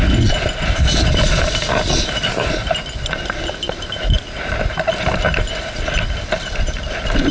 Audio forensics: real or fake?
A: real